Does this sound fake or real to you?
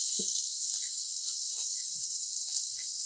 fake